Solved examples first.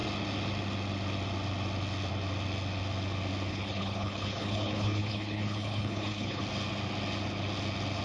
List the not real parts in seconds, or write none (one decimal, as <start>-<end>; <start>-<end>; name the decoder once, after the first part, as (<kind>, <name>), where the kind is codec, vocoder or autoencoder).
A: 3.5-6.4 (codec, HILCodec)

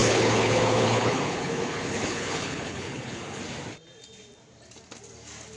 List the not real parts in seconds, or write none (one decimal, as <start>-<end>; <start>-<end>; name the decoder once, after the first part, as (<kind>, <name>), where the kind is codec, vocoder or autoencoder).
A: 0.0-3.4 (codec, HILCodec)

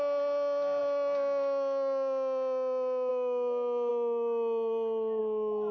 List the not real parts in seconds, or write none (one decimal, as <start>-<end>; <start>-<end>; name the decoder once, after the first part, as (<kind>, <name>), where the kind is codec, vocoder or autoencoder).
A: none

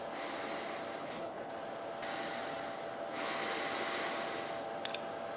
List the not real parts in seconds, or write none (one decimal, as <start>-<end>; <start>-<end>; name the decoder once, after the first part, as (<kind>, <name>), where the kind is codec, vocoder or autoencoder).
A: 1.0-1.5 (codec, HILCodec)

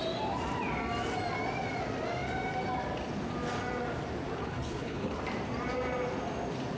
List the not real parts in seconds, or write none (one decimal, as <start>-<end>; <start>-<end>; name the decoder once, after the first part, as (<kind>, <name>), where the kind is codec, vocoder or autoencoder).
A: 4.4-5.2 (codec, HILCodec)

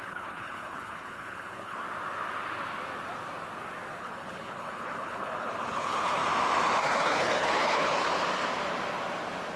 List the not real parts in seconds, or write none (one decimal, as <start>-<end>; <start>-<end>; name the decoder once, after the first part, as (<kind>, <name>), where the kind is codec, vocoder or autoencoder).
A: 0.0-1.8 (codec, HILCodec); 4.0-6.2; 6.8-8.1